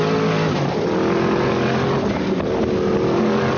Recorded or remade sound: recorded